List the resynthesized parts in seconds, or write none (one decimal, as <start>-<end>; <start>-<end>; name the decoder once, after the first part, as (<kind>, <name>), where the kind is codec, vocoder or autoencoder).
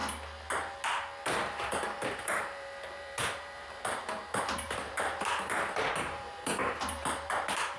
1.2-7.8 (vocoder, BigVGAN v2)